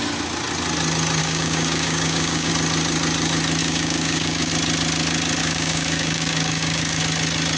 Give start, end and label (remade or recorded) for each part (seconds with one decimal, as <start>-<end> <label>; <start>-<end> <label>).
0.0-1.2 recorded; 1.2-2.5 remade; 2.5-3.6 recorded; 3.6-4.5 remade; 4.5-5.4 recorded; 5.4-7.0 remade; 7.0-7.6 recorded